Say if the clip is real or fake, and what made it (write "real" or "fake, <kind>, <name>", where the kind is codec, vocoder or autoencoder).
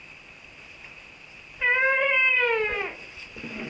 real